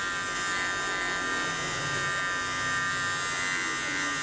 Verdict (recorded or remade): recorded